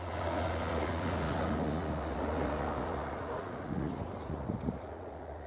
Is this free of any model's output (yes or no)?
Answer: no